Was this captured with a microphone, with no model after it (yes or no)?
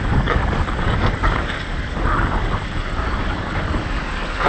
no